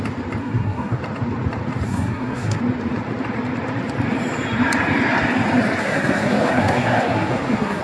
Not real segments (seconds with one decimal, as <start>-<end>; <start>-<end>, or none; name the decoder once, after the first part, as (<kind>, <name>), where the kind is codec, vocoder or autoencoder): 0.4-1.0 (codec, SNAC); 1.9-2.6; 5.8-7.8